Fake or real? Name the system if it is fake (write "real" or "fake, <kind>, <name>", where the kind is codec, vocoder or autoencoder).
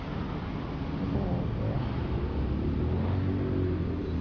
real